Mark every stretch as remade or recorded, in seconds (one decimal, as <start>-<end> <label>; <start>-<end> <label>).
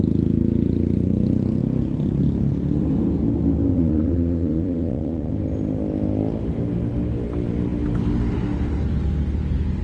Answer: 0.0-3.7 recorded; 3.7-5.3 remade; 5.3-9.8 recorded